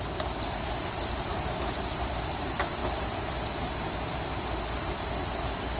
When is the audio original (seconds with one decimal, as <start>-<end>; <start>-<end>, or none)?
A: 0.0-1.3; 1.8-5.8